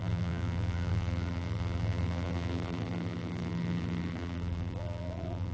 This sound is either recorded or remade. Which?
remade